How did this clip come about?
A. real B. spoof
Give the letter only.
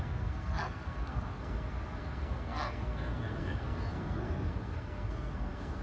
B